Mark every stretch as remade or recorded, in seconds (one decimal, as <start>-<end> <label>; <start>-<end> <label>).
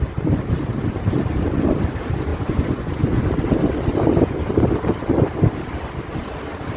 0.0-2.3 recorded; 2.3-3.2 remade; 3.2-6.8 recorded